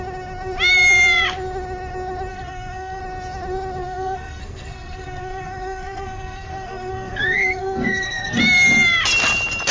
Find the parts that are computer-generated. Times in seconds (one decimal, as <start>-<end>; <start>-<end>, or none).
2.3-3.0; 3.8-8.4